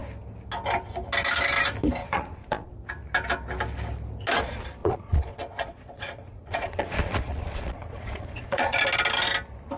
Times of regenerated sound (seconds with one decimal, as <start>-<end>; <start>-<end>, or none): 2.0-2.7; 4.8-8.8